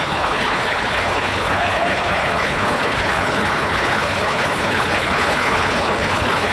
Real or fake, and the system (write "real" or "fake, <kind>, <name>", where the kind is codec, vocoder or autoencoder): fake, codec, HILCodec